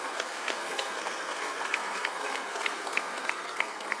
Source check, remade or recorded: remade